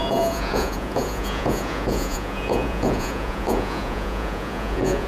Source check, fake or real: fake